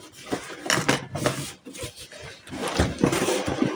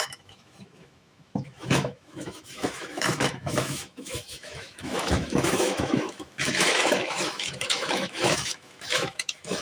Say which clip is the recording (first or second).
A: first